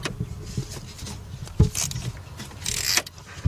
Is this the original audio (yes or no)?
yes